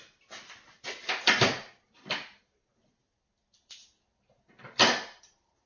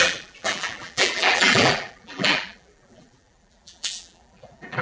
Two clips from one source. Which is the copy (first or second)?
second